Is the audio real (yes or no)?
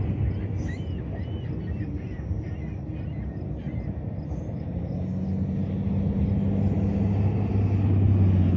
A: yes